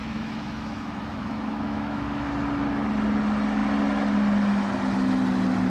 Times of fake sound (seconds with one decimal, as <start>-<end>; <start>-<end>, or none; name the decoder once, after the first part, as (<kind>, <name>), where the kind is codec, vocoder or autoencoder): 0.0-2.3 (autoencoder, DAC-VAE)